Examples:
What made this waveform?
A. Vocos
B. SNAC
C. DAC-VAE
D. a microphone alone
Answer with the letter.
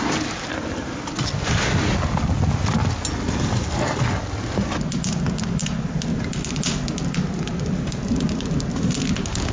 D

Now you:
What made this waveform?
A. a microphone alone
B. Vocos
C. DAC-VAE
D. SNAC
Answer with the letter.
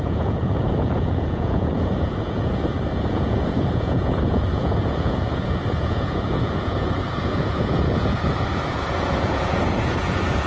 B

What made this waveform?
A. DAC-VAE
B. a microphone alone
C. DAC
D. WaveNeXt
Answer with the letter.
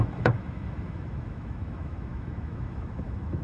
A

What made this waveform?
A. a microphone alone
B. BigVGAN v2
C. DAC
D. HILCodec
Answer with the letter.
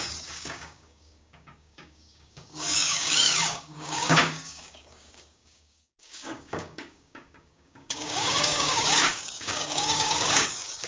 C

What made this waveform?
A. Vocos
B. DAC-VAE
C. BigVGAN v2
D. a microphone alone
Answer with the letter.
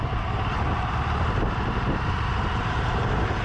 C